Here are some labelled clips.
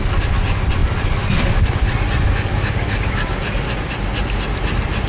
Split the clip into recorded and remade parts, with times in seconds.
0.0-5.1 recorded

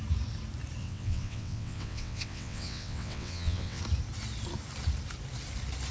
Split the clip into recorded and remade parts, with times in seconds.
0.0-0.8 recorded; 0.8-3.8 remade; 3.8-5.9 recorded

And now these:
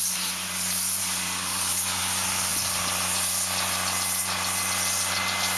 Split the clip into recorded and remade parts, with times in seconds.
0.0-1.0 recorded; 1.0-2.0 remade; 2.0-5.6 recorded